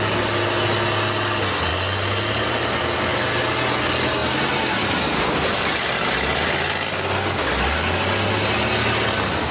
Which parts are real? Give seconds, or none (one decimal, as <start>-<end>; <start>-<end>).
0.0-9.5